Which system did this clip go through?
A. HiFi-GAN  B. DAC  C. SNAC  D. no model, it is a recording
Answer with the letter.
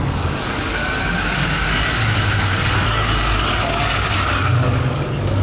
B